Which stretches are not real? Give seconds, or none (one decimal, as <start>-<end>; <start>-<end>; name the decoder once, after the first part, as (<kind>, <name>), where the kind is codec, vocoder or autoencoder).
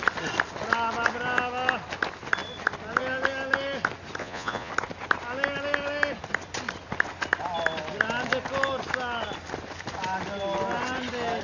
4.2-4.7 (vocoder, Vocos)